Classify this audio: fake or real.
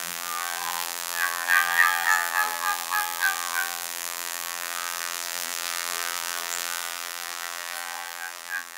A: fake